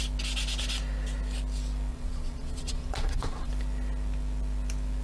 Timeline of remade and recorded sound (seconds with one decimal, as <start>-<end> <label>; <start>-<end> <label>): 0.0-1.9 recorded; 1.9-3.5 remade; 3.5-5.0 recorded